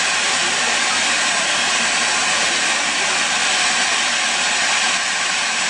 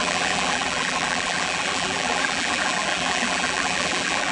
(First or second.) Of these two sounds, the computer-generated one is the second